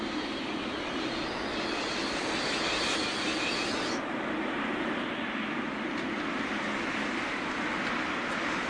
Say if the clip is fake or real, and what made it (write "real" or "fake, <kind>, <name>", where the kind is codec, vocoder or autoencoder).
real